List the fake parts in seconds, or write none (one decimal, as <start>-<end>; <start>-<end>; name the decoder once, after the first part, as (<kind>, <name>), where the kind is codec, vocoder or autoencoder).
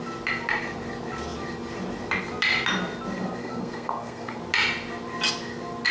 3.4-4.4 (codec, SNAC)